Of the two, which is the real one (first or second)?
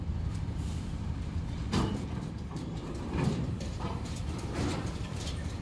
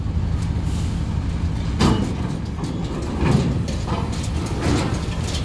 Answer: second